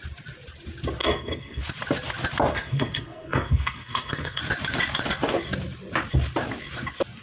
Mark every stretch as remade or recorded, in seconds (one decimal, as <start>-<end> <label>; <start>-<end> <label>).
0.0-1.0 recorded; 1.0-1.6 remade; 1.6-2.5 recorded; 2.5-4.4 remade; 4.4-7.2 recorded